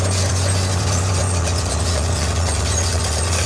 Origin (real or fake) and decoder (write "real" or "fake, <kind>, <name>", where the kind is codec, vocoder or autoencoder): fake, vocoder, Vocos